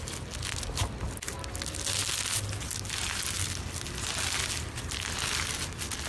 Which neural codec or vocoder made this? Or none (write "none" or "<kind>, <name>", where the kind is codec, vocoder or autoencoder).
none